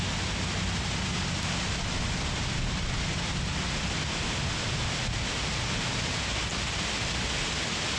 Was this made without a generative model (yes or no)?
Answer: yes